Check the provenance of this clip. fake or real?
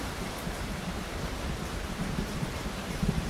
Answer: fake